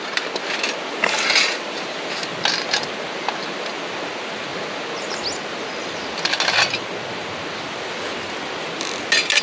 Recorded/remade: recorded